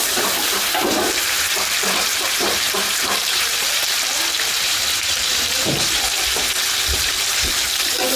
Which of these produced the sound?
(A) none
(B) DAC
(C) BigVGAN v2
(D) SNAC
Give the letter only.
C